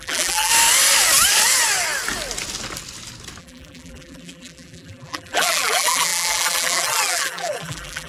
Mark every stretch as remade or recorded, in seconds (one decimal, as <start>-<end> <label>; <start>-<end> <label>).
0.0-0.5 remade; 0.5-3.4 recorded; 3.4-8.1 remade